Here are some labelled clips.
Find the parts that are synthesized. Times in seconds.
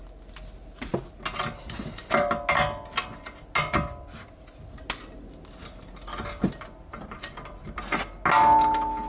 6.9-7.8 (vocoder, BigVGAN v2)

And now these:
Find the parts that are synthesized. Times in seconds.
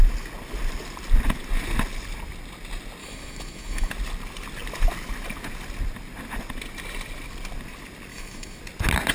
3.0-3.9 (autoencoder, DAC-VAE); 8.1-8.6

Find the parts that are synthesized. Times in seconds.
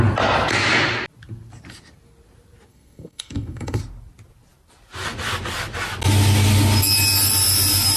2.7-3.8 (codec, SNAC)